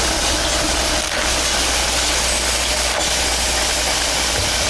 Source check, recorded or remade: recorded